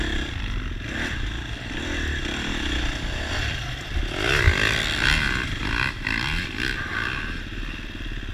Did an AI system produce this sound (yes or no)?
no